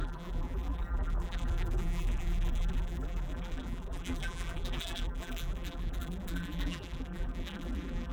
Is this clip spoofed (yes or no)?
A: yes